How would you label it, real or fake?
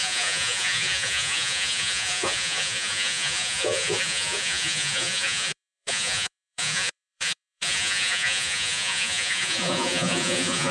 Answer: fake